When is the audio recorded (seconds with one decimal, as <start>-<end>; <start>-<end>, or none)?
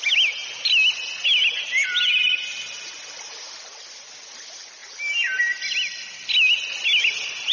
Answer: 0.0-7.5